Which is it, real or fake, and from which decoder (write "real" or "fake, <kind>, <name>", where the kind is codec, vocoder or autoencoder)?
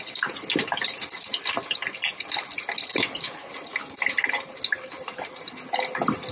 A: real